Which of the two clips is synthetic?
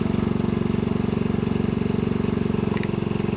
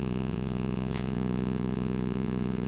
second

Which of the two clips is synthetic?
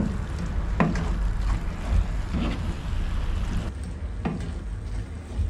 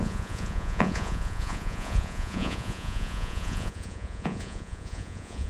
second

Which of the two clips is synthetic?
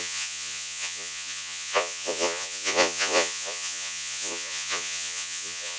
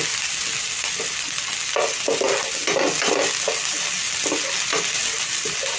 first